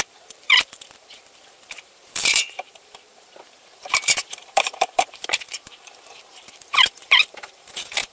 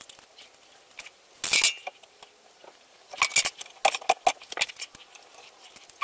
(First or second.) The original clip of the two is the second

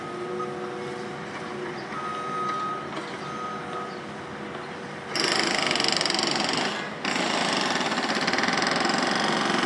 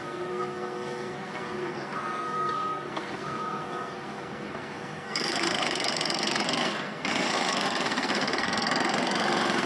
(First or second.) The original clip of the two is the first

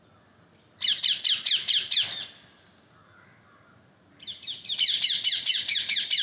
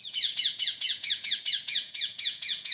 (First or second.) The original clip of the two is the first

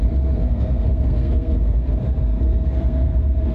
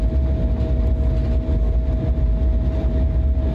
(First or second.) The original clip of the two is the second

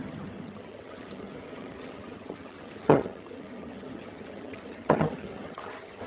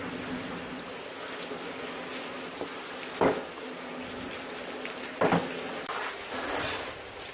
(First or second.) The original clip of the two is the second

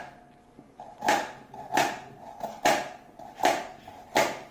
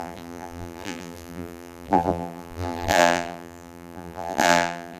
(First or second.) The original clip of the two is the first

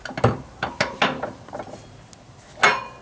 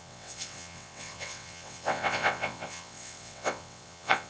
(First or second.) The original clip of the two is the first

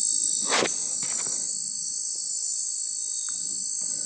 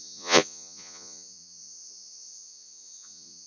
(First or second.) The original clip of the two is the first